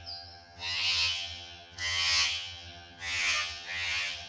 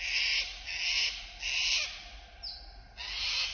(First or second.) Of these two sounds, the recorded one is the second